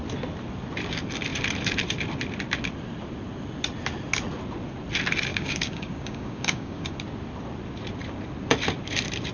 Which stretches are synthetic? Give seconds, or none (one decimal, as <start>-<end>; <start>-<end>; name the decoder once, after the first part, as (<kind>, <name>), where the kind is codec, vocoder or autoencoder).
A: 5.3-6.9 (codec, DAC)